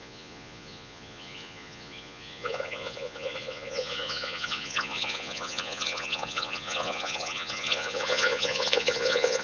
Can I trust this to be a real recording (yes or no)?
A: no